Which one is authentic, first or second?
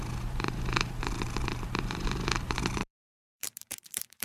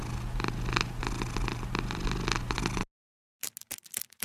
second